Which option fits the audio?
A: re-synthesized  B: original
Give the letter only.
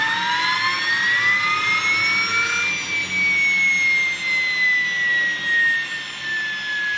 B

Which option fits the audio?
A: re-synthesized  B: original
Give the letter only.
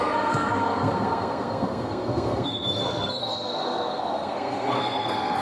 A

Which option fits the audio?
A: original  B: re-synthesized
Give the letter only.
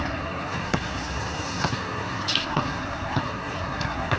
B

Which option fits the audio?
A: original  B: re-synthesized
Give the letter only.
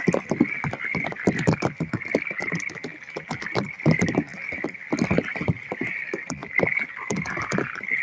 A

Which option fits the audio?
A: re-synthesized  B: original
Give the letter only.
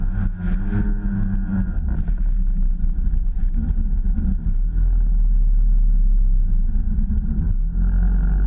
B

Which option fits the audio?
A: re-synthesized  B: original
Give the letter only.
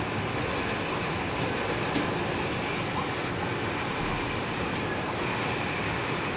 B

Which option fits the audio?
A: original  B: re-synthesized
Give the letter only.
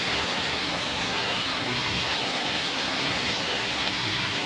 B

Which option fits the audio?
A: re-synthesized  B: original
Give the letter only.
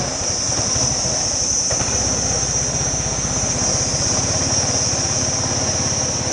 B